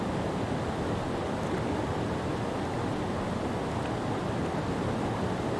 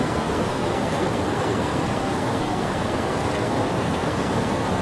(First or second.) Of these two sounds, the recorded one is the first